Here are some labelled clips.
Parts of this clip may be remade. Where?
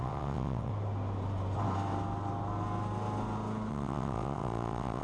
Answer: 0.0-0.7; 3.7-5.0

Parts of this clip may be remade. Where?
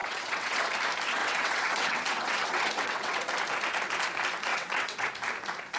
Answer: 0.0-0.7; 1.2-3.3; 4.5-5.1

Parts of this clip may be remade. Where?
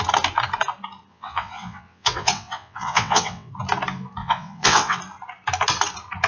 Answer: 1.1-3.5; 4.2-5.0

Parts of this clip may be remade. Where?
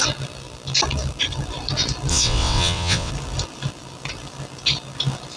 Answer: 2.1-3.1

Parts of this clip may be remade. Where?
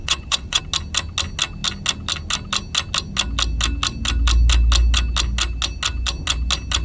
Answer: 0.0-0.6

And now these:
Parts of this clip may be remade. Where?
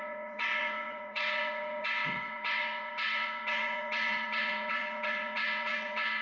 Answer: 0.0-6.2